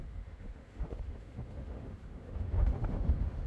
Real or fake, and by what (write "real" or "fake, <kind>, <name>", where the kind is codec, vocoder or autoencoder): fake, autoencoder, DAC-VAE